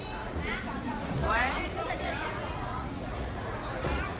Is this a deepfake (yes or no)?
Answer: yes